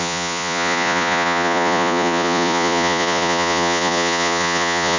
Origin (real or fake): fake